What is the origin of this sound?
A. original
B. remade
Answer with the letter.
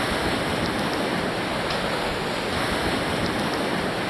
A